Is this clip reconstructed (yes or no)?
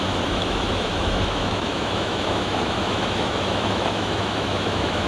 yes